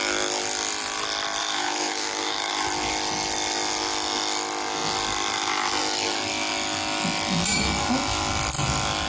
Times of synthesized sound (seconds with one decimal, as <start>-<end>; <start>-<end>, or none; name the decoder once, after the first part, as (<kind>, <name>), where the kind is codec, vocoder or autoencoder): 1.4-2.5 (autoencoder, DAC-VAE)

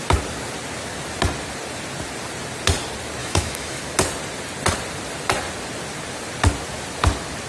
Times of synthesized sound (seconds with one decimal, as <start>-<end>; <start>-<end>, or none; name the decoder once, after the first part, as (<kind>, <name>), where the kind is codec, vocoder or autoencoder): 3.2-3.8 (autoencoder, DAC-VAE)